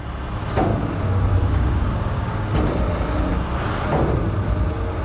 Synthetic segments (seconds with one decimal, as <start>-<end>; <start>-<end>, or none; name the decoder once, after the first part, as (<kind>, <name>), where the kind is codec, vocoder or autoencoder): 0.7-2.5 (codec, DAC)